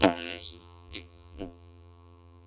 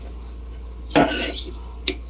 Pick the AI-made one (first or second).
first